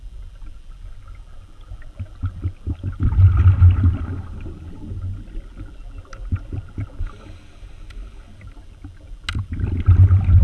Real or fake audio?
real